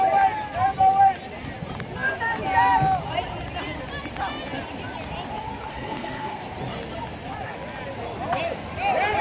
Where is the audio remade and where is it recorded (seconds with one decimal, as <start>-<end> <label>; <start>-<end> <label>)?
0.0-5.7 recorded; 5.7-6.4 remade; 6.4-9.2 recorded